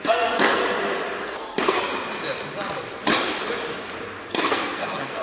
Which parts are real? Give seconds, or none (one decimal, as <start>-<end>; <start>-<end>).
0.6-1.2; 1.9-4.3